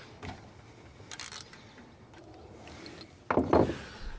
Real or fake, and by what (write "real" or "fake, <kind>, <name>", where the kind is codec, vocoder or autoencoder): real